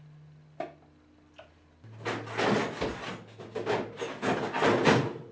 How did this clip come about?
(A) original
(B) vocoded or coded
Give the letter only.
A